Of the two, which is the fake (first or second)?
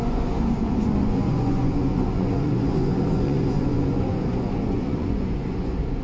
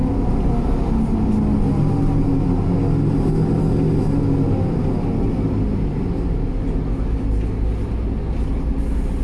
first